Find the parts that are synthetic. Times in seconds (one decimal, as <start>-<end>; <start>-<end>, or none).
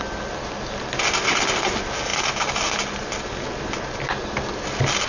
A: none